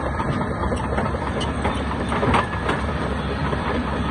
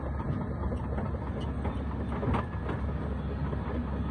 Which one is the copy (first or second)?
first